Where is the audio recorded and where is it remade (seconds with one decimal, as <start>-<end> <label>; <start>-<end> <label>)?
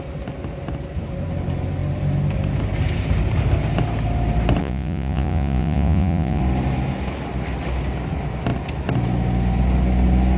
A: 0.0-4.6 recorded; 4.6-6.4 remade; 6.4-10.4 recorded